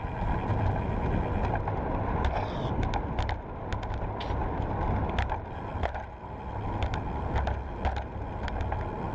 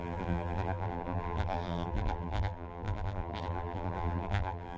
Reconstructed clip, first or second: second